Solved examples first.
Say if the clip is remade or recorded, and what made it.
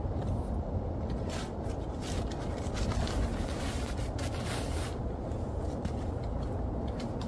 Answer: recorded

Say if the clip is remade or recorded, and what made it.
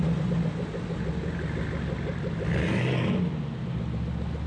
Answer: recorded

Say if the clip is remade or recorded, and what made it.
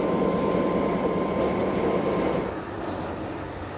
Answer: recorded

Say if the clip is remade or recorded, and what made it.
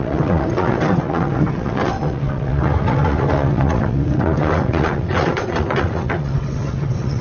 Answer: remade, vocoder, WaveNeXt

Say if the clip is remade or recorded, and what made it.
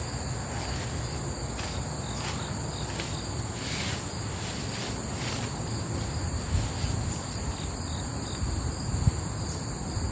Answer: recorded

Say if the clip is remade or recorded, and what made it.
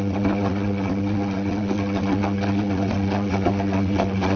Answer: remade, vocoder, WaveNeXt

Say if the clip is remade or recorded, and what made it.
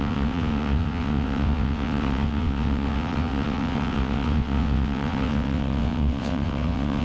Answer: remade, vocoder, WaveNeXt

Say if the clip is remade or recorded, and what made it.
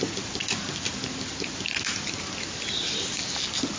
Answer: recorded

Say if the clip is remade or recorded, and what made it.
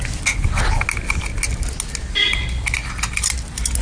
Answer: recorded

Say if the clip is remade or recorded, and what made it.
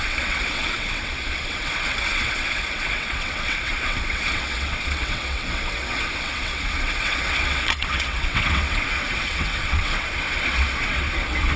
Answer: remade, vocoder, WaveNeXt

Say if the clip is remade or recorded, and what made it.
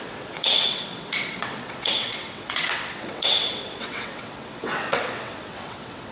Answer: remade, vocoder, WaveNeXt